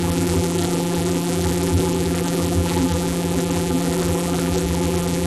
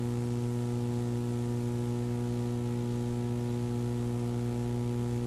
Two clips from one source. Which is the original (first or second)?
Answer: second